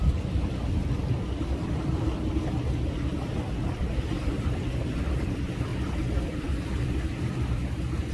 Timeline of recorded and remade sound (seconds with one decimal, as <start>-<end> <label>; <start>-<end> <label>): 0.0-5.7 remade; 5.7-6.2 recorded; 6.2-8.1 remade